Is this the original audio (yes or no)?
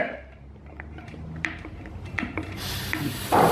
no